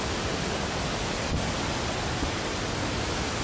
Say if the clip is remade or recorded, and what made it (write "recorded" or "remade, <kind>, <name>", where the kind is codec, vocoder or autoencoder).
recorded